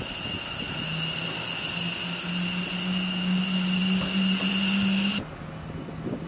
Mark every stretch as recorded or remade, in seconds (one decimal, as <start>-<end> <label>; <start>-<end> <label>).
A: 0.0-6.3 recorded